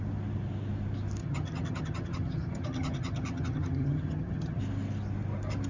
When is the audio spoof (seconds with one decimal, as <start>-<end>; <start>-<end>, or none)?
1.2-4.6